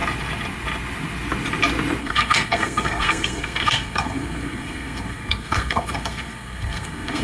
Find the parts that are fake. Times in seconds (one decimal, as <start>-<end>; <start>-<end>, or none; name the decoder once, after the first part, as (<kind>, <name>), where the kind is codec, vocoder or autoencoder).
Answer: 2.0-7.2 (codec, SNAC)

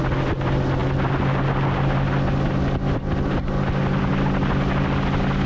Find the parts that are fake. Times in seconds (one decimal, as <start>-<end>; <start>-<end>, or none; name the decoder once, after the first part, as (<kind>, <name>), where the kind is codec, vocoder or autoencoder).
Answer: none